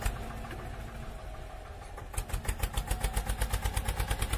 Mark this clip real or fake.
real